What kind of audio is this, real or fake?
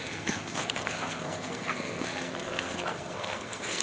fake